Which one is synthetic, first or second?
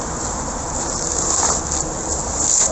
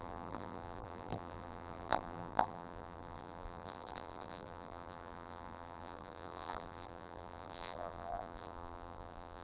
second